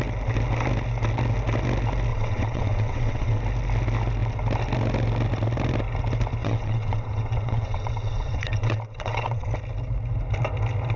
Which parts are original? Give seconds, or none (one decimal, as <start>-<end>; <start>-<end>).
0.0-2.1; 3.4-6.4; 9.5-11.0